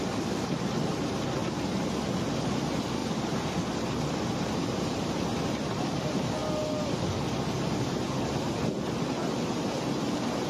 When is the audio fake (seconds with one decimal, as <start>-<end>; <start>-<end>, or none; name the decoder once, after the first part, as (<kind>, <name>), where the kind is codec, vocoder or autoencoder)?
0.0-1.4 (vocoder, BigVGAN v2); 2.2-6.4